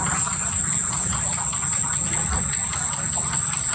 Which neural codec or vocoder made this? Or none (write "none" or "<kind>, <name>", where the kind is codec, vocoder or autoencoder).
none